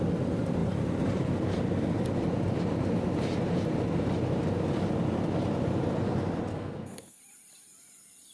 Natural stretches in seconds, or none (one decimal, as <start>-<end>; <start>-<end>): 0.0-6.5; 7.2-8.3